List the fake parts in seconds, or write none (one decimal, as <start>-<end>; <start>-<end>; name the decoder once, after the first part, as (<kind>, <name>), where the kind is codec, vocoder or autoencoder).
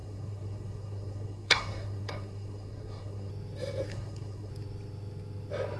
0.0-3.3 (codec, SNAC); 3.9-4.5